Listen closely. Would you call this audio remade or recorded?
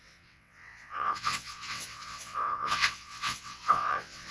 remade